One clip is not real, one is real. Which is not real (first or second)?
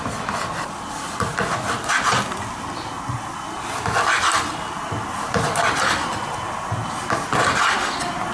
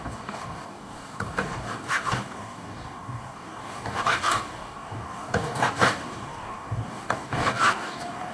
second